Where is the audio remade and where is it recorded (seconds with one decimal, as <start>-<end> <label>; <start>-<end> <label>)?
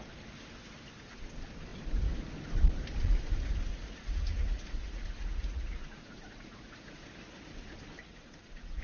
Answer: 0.0-3.7 recorded; 3.7-7.1 remade; 7.1-8.0 recorded; 8.0-8.8 remade